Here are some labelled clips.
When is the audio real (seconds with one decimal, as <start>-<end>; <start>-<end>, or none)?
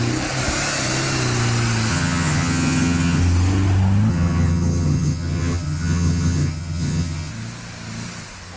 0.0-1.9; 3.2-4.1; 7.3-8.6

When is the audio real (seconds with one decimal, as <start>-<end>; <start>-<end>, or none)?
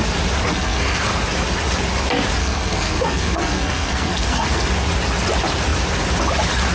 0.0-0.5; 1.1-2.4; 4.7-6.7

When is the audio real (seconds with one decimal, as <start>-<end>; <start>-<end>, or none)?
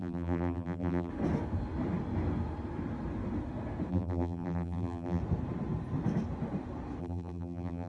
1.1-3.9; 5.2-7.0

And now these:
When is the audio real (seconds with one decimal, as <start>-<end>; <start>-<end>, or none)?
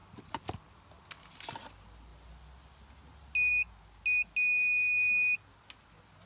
0.0-6.3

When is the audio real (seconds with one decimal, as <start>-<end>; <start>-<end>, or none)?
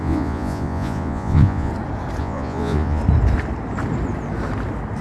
1.7-2.2; 3.0-5.0